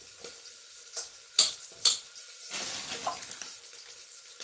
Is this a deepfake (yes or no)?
no